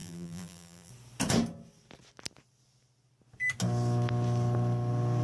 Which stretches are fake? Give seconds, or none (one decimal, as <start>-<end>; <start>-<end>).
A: 0.0-0.9